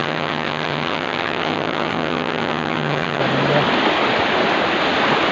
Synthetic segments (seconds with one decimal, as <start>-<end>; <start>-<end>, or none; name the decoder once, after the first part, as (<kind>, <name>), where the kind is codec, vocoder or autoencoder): 0.0-3.2 (vocoder, HiFi-GAN)